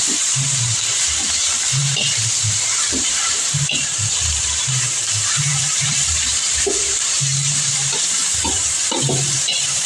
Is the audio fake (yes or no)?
yes